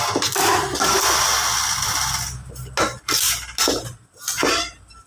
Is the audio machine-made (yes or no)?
no